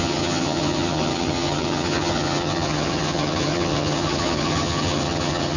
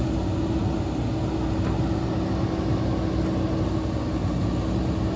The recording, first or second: second